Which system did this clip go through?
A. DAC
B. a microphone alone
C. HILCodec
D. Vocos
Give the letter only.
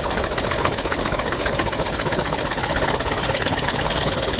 C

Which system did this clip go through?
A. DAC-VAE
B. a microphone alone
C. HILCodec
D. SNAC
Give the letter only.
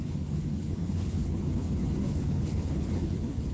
C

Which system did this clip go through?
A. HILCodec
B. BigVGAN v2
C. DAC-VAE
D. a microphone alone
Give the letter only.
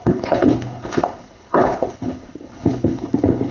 A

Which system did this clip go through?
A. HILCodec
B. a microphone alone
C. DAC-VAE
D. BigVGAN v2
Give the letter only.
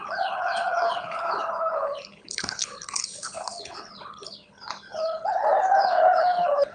A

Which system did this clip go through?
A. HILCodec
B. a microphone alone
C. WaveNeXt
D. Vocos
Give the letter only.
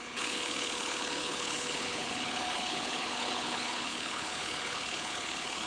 A